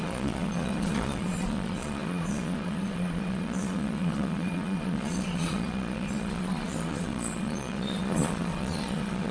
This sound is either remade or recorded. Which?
remade